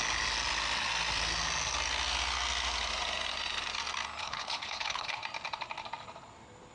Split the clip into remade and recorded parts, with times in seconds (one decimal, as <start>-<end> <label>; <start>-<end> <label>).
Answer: 0.0-4.2 recorded; 4.2-5.2 remade; 5.2-6.7 recorded